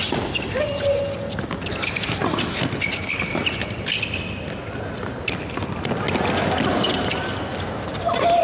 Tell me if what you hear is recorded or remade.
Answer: recorded